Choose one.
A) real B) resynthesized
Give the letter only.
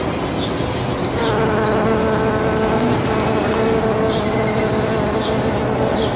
A